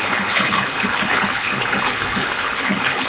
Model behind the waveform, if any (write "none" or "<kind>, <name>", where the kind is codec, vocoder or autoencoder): codec, HILCodec